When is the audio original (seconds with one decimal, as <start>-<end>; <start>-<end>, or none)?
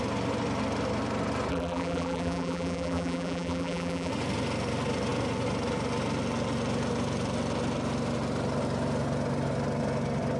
0.0-1.5; 4.1-10.4